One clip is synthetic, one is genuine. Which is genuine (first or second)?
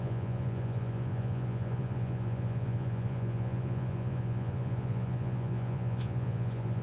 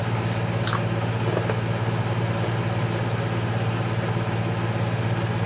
second